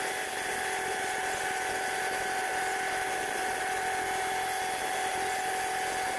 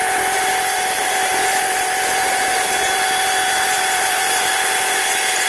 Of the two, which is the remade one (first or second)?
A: second